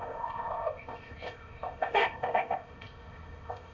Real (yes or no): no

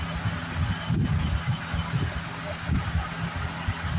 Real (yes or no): yes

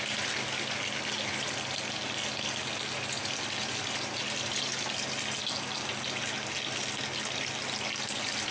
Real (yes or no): yes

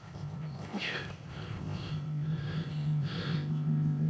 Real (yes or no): no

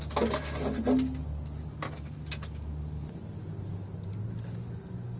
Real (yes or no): yes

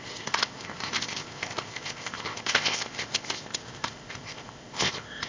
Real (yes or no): no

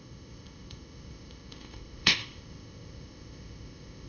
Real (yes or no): no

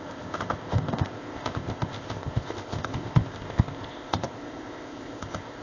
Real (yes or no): no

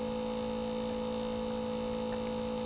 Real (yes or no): yes